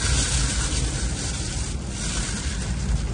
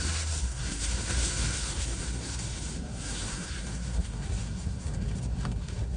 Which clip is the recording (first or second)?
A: first